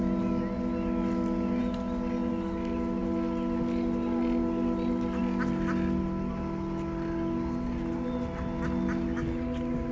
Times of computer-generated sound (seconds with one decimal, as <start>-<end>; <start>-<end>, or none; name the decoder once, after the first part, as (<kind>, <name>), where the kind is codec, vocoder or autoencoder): none